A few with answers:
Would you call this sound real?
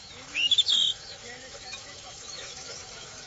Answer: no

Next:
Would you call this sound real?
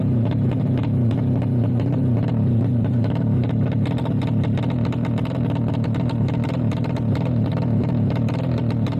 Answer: yes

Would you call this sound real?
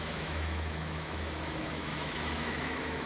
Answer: no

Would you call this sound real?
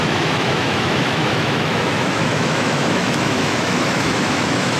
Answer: no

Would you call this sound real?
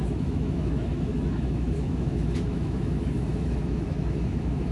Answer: no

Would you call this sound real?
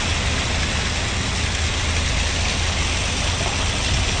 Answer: yes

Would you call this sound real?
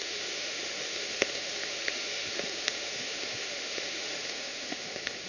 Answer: no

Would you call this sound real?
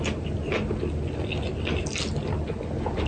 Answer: yes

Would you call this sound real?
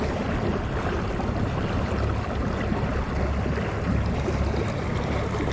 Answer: yes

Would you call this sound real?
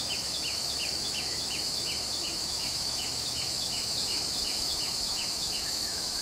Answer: no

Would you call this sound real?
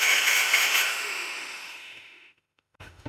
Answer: no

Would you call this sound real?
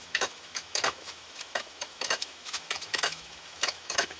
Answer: no